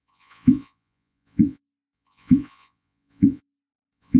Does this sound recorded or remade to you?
remade